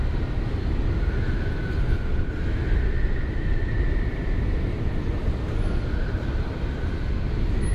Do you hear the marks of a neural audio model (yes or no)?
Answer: no